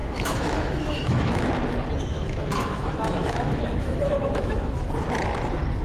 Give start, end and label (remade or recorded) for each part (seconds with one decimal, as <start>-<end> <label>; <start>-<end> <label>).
0.0-1.5 remade; 1.5-2.1 recorded; 2.1-4.9 remade; 4.9-5.8 recorded